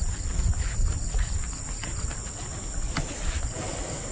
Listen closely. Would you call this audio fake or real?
real